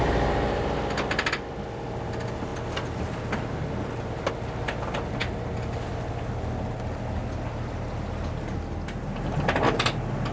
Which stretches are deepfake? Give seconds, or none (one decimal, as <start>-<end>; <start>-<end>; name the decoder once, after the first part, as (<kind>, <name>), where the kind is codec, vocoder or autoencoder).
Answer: none